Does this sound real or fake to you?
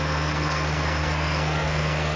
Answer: fake